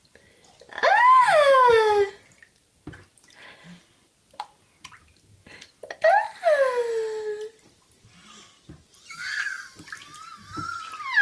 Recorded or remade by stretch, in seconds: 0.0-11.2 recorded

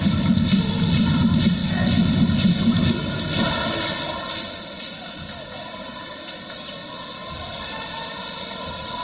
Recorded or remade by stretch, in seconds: 0.0-1.6 remade; 1.6-6.5 recorded; 6.5-9.0 remade